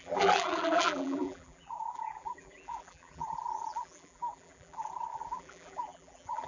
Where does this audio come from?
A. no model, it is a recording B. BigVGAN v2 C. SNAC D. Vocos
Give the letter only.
B